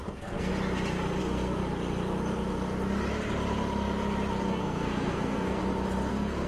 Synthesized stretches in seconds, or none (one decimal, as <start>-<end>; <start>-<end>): 0.0-0.5; 1.2-1.6; 4.5-5.6; 6.1-6.5